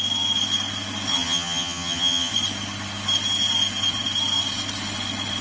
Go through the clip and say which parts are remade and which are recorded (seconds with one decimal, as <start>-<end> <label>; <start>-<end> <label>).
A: 0.0-1.1 recorded; 1.1-2.3 remade; 2.3-5.4 recorded